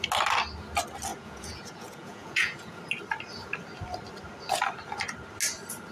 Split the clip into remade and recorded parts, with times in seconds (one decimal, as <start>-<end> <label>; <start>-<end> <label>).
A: 0.0-1.1 recorded; 1.1-2.8 remade; 2.8-5.9 recorded